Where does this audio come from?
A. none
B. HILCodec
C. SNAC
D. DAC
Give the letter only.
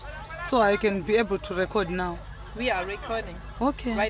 A